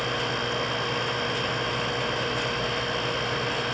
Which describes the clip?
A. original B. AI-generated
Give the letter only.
A